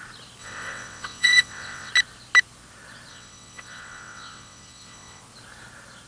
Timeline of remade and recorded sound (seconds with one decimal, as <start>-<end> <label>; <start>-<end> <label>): 0.0-0.4 recorded; 0.4-1.9 remade; 1.9-3.1 recorded; 3.1-5.2 remade; 5.2-6.1 recorded